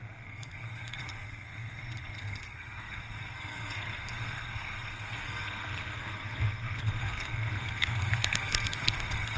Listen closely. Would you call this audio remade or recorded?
remade